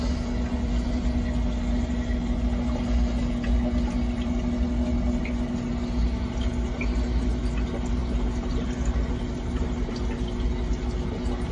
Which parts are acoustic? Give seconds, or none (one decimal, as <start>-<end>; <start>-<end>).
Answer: 0.0-11.5